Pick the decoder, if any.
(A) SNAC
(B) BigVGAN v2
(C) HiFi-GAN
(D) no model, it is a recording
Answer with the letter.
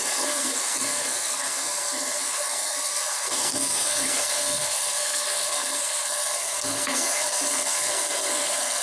A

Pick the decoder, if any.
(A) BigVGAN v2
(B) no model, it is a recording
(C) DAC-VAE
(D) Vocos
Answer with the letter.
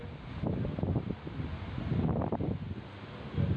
B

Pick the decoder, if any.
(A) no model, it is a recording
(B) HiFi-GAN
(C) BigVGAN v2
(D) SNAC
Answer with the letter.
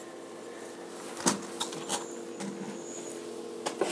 A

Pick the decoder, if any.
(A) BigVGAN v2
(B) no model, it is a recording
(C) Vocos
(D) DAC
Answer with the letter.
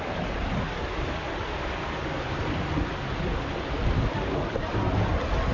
B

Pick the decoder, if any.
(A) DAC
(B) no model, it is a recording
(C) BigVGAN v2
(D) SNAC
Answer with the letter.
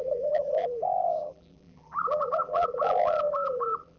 C